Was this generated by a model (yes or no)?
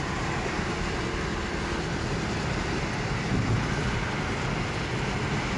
no